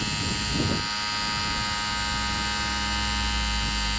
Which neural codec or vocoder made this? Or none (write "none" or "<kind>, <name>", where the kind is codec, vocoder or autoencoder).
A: none